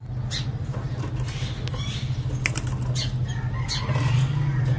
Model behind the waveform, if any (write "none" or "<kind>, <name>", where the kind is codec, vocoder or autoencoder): none